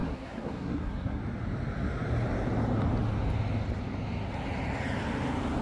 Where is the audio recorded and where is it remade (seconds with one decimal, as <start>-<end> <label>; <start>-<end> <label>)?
0.0-1.2 remade; 1.2-5.6 recorded